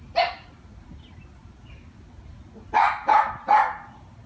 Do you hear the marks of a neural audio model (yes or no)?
no